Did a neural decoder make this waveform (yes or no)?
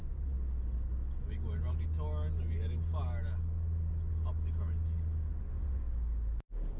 no